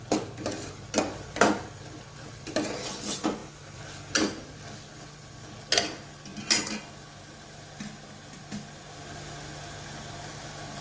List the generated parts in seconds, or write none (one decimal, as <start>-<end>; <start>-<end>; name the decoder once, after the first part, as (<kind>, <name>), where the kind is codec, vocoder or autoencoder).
none